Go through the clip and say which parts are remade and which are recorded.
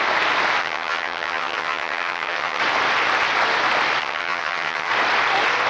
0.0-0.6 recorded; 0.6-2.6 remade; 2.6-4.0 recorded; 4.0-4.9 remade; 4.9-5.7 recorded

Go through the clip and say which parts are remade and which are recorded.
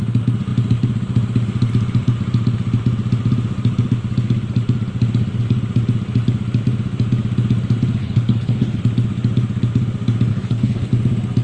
0.0-8.0 recorded; 8.0-8.8 remade; 8.8-10.3 recorded; 10.3-10.9 remade; 10.9-11.4 recorded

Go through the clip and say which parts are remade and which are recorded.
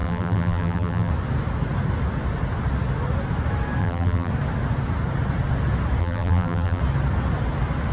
0.0-1.1 remade; 1.1-3.8 recorded; 3.8-4.3 remade; 4.3-6.0 recorded; 6.0-6.8 remade; 6.8-7.9 recorded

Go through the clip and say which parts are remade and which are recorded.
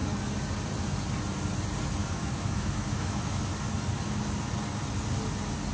0.0-2.0 recorded; 2.0-3.4 remade; 3.4-5.7 recorded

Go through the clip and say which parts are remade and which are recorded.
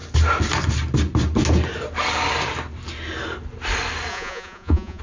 0.0-4.1 recorded; 4.1-5.0 remade